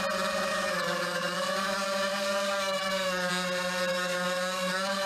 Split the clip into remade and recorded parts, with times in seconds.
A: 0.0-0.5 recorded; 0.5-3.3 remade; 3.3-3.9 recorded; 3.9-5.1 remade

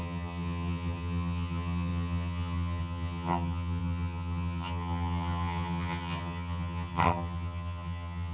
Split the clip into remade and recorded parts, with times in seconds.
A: 0.0-8.3 remade

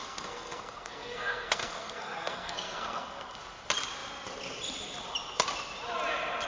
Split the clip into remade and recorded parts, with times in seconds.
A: 0.0-3.4 remade; 3.4-6.5 recorded

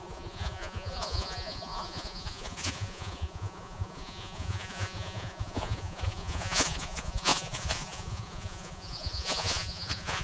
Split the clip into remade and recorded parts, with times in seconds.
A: 0.0-10.2 remade

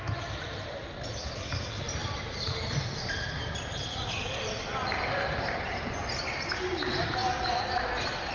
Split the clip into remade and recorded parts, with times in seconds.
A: 0.0-8.3 recorded

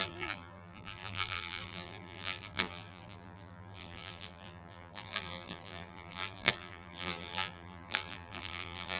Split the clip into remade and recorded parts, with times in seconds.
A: 0.0-9.0 remade

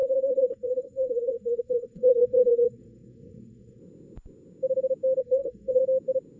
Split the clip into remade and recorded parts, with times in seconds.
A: 0.0-3.8 remade; 3.8-5.2 recorded; 5.2-5.8 remade; 5.8-6.4 recorded

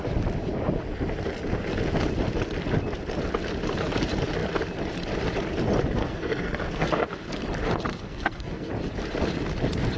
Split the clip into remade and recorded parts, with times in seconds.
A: 0.0-6.0 recorded; 6.0-7.3 remade; 7.3-7.9 recorded; 7.9-8.7 remade; 8.7-10.0 recorded